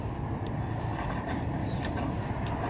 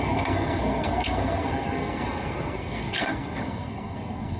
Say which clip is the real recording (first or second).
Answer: first